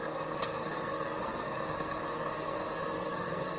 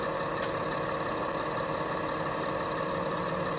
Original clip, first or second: second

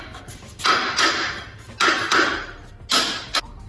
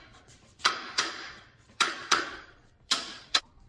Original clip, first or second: first